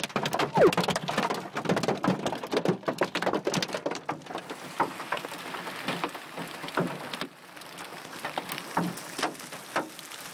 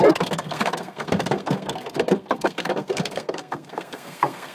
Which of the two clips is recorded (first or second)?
first